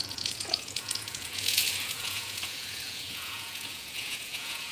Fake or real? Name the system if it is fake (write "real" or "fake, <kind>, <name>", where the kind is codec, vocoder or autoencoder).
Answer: fake, vocoder, Vocos